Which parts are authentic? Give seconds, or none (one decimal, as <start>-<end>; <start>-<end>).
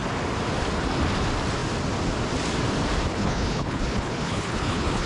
0.0-3.1